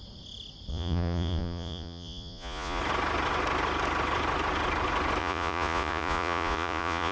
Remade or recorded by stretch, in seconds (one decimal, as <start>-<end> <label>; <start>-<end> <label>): 0.0-0.7 recorded; 0.7-2.8 remade; 2.8-5.2 recorded; 5.2-7.1 remade